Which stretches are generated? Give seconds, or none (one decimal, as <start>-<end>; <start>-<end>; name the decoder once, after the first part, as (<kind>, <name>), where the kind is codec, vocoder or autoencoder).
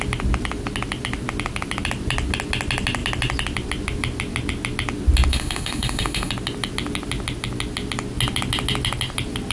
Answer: 5.3-6.3 (autoencoder, DAC-VAE)